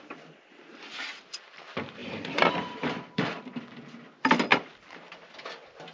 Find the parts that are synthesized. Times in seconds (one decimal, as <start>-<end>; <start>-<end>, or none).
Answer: 2.0-3.6; 4.5-5.1

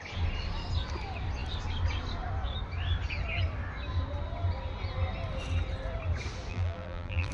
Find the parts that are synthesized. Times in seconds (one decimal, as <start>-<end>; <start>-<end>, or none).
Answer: 6.5-7.3

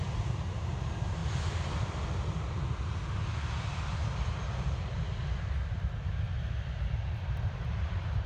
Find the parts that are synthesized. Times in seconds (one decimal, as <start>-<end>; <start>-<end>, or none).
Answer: 0.0-1.2; 5.7-8.3

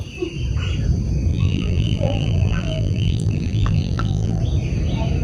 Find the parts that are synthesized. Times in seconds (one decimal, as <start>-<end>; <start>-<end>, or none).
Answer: 1.3-4.4

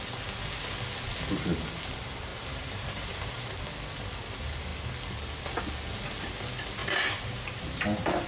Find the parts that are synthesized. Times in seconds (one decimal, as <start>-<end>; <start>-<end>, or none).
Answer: 2.3-3.7; 6.8-8.3

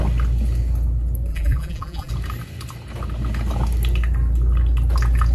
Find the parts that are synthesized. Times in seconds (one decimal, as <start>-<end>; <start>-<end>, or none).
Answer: 1.3-2.1